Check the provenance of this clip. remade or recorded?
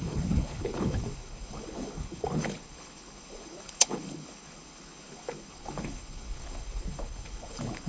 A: remade